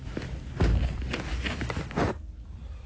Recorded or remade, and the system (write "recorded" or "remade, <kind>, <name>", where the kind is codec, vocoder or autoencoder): recorded